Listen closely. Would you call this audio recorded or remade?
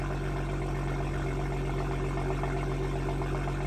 recorded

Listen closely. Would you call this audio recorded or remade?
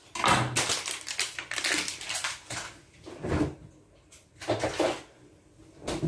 recorded